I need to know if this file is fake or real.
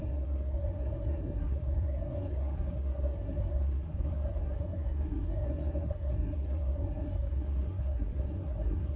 fake